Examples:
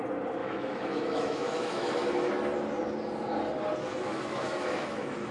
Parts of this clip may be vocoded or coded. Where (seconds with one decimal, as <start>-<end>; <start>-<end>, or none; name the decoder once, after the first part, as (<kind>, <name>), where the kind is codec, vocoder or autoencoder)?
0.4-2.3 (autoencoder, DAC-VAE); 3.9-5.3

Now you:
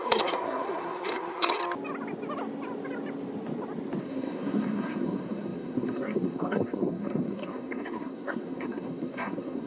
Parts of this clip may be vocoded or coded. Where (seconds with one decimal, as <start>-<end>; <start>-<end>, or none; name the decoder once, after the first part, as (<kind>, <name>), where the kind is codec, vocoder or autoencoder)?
0.0-1.6 (codec, SNAC); 4.0-9.7

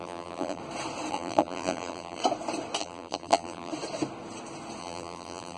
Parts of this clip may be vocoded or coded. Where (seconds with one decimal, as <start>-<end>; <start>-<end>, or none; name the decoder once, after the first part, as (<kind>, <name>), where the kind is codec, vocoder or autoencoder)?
0.0-0.6 (vocoder, BigVGAN v2); 1.1-2.2; 2.8-3.7; 4.8-5.6

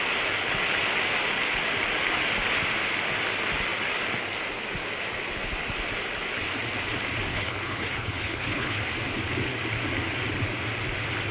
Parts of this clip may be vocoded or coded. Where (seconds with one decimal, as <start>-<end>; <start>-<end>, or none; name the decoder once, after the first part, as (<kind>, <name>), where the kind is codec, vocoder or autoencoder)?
7.3-8.8 (codec, HILCodec)

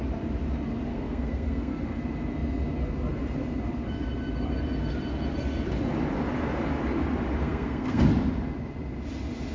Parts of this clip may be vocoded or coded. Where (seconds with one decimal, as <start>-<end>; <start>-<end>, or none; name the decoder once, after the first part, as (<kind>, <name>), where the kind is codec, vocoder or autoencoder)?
0.9-2.0 (codec, SNAC); 7.4-8.0

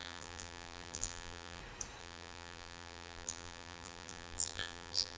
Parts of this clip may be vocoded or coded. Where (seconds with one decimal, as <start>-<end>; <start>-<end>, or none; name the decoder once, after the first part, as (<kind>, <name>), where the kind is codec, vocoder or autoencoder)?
0.0-1.6 (vocoder, BigVGAN v2); 2.0-5.2